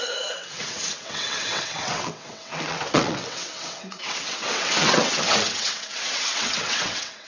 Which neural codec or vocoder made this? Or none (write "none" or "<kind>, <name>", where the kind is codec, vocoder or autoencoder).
vocoder, WaveNeXt